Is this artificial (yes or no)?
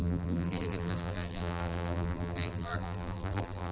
yes